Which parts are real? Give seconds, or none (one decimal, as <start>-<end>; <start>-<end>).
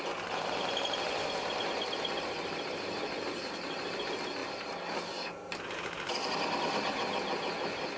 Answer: 0.0-8.0